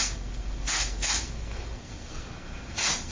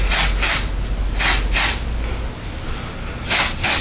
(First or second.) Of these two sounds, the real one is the second